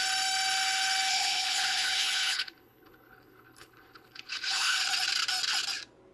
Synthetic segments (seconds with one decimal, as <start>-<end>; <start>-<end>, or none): 1.1-4.8